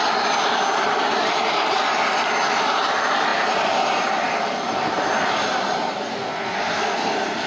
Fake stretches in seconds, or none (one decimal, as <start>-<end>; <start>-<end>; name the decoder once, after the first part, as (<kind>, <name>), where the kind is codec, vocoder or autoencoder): 6.2-7.1 (codec, SNAC)